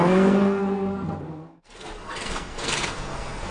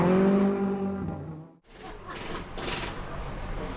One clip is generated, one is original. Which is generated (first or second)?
first